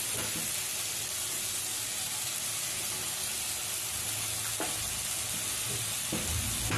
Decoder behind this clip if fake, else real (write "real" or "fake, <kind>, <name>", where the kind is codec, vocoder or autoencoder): real